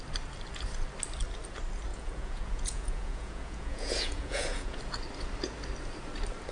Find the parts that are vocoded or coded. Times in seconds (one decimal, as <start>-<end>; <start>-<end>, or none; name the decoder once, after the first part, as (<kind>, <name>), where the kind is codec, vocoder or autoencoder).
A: 1.9-4.8 (vocoder, Vocos)